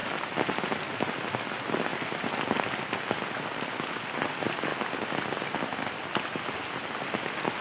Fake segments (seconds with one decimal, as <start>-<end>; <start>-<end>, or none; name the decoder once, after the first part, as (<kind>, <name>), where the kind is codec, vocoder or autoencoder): none